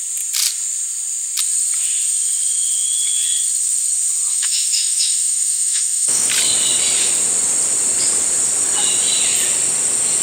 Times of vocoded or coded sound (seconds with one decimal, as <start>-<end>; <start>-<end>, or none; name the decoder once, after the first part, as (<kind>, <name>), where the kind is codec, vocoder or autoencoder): 4.3-6.3 (autoencoder, DAC-VAE)